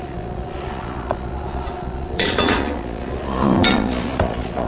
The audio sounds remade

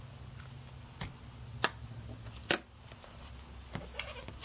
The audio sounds recorded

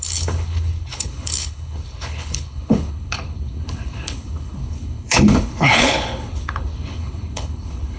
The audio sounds remade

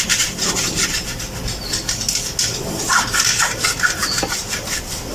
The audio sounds recorded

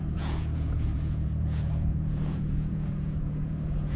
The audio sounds remade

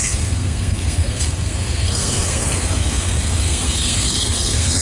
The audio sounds remade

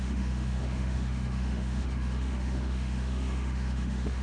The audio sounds remade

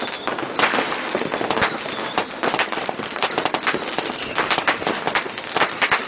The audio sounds recorded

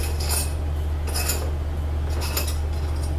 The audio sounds recorded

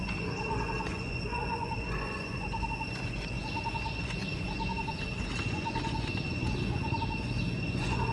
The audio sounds remade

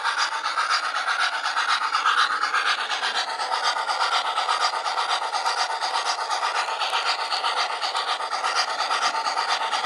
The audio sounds recorded